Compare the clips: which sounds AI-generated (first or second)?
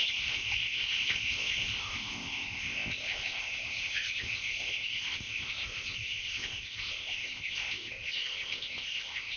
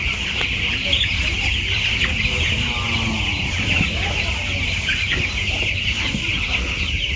first